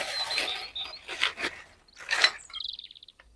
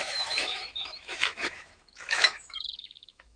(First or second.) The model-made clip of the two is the second